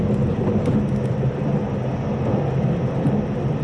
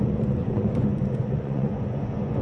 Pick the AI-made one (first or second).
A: second